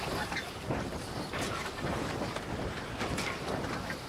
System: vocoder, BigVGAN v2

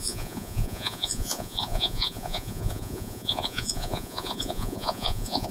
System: vocoder, Vocos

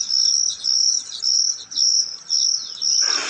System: none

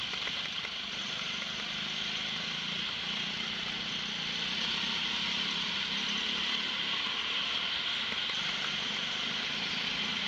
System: none